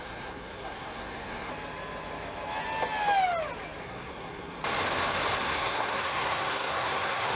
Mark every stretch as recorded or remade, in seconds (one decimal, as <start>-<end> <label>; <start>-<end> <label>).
0.0-1.5 remade; 1.5-3.8 recorded; 3.8-4.6 remade; 4.6-5.4 recorded; 5.4-7.4 remade